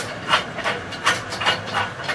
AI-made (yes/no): yes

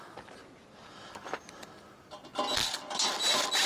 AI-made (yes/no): no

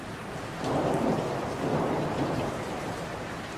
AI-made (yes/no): yes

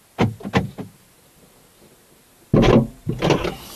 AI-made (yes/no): no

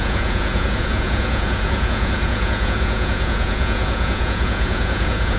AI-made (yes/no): yes